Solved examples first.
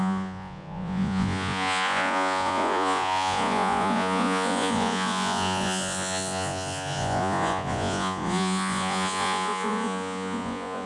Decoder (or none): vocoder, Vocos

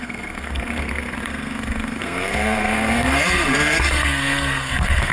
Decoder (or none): codec, SNAC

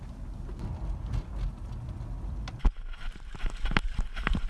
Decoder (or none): none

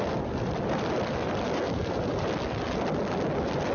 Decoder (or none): none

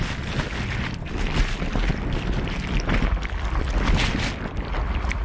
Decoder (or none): none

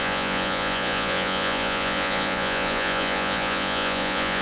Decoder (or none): vocoder, Vocos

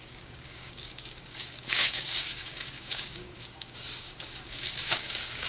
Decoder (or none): codec, DAC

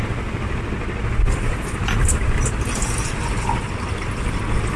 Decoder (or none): none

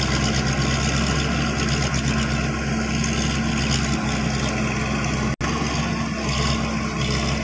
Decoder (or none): none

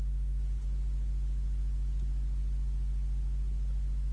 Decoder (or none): none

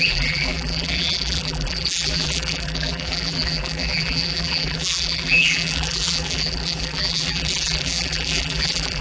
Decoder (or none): vocoder, BigVGAN v2